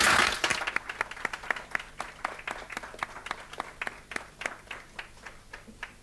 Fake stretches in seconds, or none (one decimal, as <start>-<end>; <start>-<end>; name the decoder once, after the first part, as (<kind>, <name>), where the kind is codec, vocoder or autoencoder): none